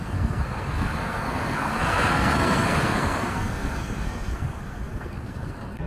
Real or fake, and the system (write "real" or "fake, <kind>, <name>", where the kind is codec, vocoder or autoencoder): fake, codec, SNAC